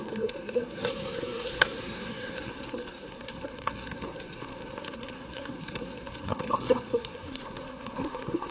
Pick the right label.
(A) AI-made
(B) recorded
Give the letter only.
A